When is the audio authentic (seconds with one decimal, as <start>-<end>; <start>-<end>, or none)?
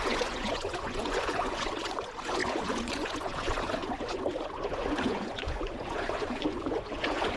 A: none